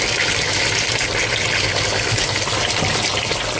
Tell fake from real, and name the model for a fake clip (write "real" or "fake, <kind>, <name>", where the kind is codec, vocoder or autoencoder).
real